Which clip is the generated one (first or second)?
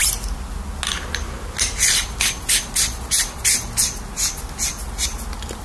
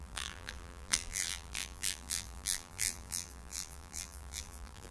second